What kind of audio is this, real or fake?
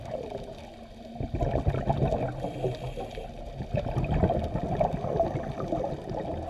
real